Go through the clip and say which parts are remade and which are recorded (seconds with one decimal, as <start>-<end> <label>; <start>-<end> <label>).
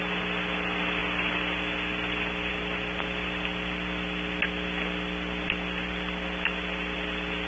0.0-7.5 recorded